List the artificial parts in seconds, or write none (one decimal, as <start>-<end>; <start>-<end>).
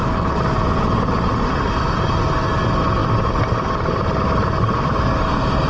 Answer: none